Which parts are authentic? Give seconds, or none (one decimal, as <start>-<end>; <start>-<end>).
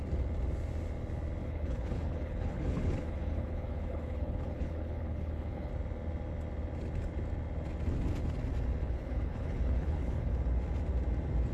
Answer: 0.0-1.4; 5.7-8.8; 10.3-11.5